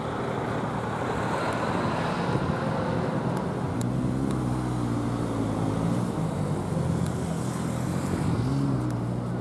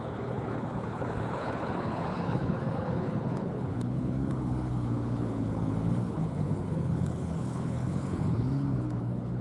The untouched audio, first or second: first